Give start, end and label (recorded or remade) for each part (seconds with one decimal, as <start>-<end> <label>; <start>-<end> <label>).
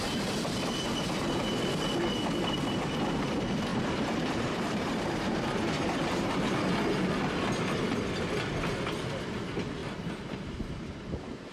0.0-3.7 recorded; 3.7-6.6 remade; 6.6-9.8 recorded; 9.8-11.0 remade; 11.0-11.5 recorded